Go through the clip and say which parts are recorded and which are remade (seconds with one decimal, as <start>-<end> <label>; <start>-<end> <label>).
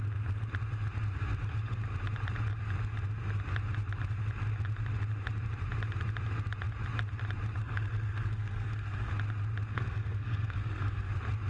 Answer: 0.0-7.6 recorded; 7.6-9.1 remade; 9.1-9.7 recorded; 9.7-11.1 remade; 11.1-11.5 recorded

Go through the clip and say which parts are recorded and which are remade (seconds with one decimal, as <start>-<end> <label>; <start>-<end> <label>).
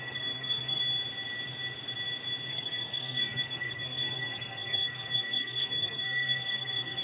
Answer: 0.0-0.8 remade; 0.8-2.5 recorded; 2.5-7.0 remade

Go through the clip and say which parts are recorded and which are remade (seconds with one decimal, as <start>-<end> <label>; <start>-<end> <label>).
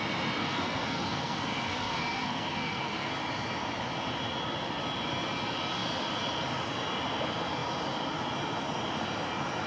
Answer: 0.0-0.4 recorded; 0.4-3.1 remade; 3.1-9.7 recorded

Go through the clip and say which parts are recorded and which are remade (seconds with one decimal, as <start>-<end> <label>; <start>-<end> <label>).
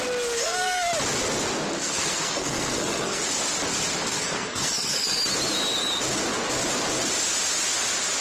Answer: 0.0-0.4 recorded; 0.4-0.9 remade; 0.9-1.8 recorded; 1.8-3.2 remade; 3.2-4.1 recorded; 4.1-5.2 remade; 5.2-8.2 recorded